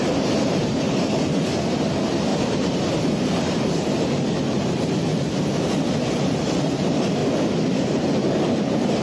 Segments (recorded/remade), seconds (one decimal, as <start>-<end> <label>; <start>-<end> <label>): 0.0-5.1 remade; 5.1-6.1 recorded; 6.1-7.2 remade; 7.2-8.6 recorded; 8.6-9.0 remade